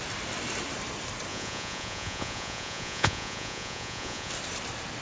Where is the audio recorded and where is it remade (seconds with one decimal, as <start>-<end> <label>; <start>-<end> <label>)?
0.0-1.3 recorded; 1.3-4.3 remade; 4.3-5.0 recorded